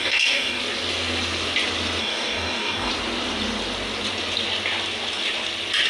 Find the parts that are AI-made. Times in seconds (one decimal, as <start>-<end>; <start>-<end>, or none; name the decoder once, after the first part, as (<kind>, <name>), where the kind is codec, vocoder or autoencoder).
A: 0.0-0.6 (codec, DAC); 2.0-2.9